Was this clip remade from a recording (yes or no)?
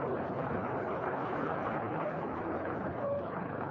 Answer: yes